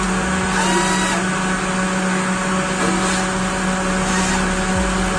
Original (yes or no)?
yes